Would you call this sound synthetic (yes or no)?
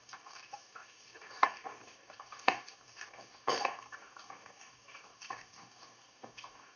yes